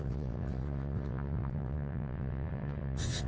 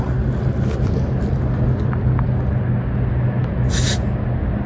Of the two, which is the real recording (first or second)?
second